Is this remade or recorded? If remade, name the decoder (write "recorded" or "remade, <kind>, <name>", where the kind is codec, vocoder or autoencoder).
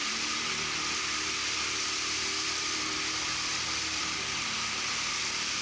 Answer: remade, vocoder, BigVGAN v2